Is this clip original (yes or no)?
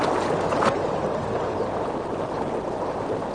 yes